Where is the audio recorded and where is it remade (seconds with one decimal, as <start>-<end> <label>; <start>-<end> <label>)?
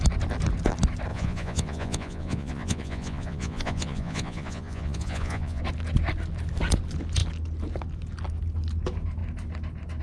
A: 0.0-1.1 recorded; 1.1-5.6 remade; 5.6-10.0 recorded